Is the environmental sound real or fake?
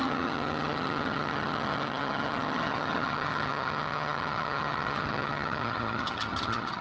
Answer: fake